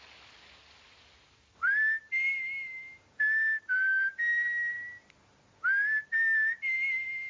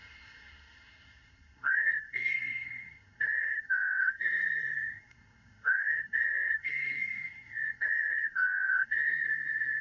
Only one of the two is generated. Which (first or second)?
second